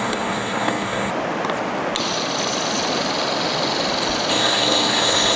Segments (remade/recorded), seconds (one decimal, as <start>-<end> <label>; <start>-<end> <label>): 0.0-1.1 remade; 1.1-4.3 recorded; 4.3-5.4 remade